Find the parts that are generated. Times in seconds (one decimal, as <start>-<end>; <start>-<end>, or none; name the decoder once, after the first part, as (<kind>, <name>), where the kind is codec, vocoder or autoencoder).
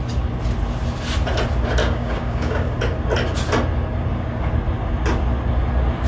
1.8-2.7 (codec, DAC)